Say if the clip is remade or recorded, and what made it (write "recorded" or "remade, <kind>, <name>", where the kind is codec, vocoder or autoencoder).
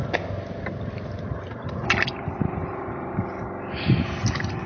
recorded